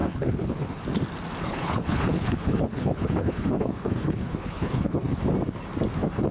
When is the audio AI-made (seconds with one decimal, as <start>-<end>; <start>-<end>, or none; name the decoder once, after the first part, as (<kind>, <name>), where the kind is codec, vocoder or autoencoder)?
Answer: 0.0-0.8 (codec, HILCodec); 1.4-5.2